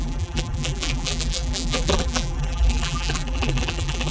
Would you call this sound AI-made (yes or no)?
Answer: yes